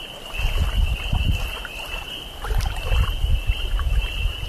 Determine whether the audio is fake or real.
real